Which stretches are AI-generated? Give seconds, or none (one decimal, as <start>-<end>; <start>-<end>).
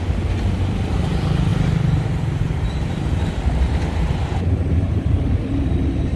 1.5-5.2